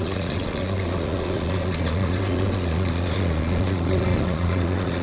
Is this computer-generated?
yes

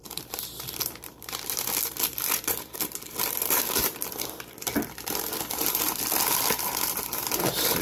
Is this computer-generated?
yes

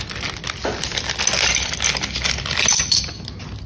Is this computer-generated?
no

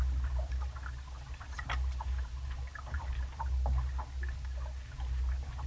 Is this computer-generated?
no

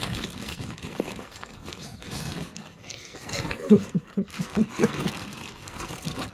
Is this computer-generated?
yes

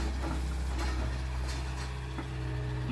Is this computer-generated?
no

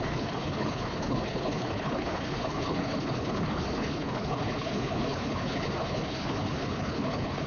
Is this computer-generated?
yes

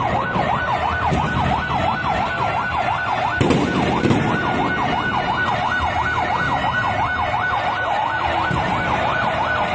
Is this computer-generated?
no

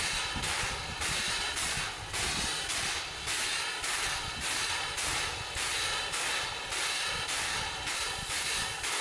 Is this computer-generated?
no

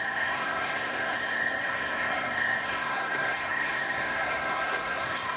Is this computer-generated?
yes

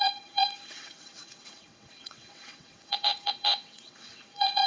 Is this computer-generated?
yes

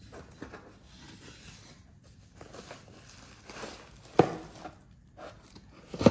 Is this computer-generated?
no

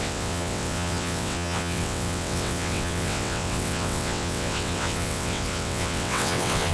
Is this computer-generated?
yes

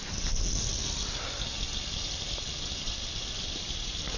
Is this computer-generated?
no